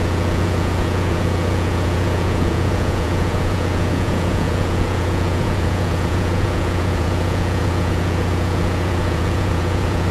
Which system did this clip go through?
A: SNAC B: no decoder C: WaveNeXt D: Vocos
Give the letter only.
D